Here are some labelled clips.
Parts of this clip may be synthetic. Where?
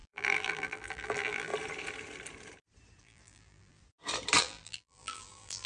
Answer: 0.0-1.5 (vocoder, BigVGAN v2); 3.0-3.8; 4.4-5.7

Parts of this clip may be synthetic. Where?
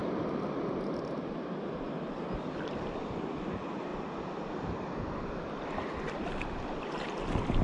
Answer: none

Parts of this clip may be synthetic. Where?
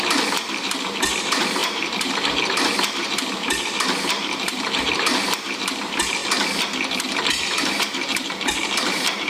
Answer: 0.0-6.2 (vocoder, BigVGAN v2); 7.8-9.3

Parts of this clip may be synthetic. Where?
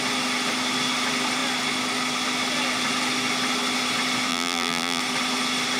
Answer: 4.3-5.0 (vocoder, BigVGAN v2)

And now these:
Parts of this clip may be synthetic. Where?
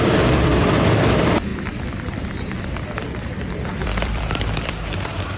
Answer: 0.0-5.4 (vocoder, BigVGAN v2)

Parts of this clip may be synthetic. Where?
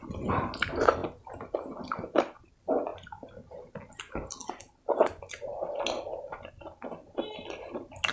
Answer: none